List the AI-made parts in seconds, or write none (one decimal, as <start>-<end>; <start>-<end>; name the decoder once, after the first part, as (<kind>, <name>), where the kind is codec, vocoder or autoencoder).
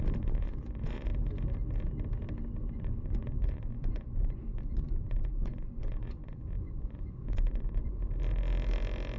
0.0-1.1 (vocoder, Vocos); 2.7-8.0